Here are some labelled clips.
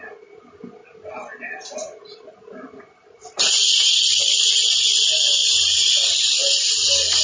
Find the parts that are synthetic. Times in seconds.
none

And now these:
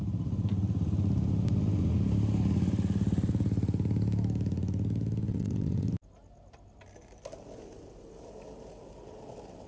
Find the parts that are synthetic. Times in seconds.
5.3-5.9